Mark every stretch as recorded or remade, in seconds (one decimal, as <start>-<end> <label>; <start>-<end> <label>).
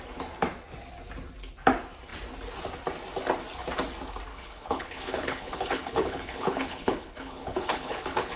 0.0-4.3 recorded; 4.3-8.4 remade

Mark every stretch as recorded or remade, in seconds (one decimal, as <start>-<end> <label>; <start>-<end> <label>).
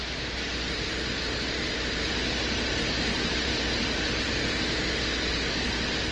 0.0-0.9 recorded; 0.9-4.6 remade; 4.6-6.1 recorded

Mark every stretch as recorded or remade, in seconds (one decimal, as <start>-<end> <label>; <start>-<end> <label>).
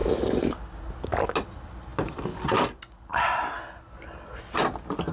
0.0-5.1 recorded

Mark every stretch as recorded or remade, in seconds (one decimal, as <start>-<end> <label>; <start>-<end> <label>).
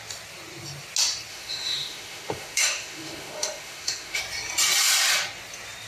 0.0-1.3 recorded; 1.3-4.2 remade; 4.2-5.9 recorded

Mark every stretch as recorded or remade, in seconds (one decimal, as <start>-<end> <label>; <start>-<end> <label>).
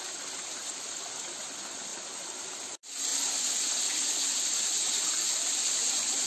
0.0-0.6 recorded; 0.6-1.4 remade; 1.4-6.3 recorded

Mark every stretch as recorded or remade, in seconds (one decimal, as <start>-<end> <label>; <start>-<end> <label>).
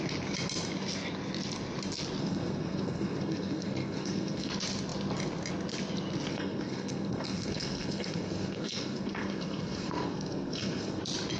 0.0-2.2 recorded; 2.2-4.5 remade; 4.5-6.3 recorded; 6.3-11.0 remade; 11.0-11.4 recorded